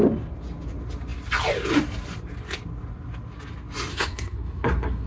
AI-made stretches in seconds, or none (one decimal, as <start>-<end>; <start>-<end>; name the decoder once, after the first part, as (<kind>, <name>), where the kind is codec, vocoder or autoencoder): 3.9-5.1 (codec, SNAC)